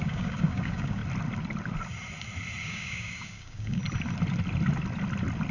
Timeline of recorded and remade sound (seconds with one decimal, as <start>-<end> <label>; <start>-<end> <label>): 0.0-1.0 remade; 1.0-2.6 recorded; 2.6-3.8 remade; 3.8-5.5 recorded